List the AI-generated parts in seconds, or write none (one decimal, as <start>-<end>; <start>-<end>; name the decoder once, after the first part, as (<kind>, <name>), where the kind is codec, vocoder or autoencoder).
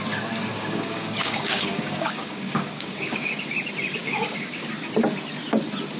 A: 0.5-3.3 (codec, DAC); 4.0-4.7